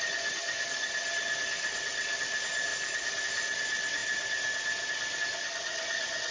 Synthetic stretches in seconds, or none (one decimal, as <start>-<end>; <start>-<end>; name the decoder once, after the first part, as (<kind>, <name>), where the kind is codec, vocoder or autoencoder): none